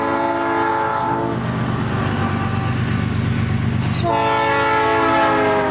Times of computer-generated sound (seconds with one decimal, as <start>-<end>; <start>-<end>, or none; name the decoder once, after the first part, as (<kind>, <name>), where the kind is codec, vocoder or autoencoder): none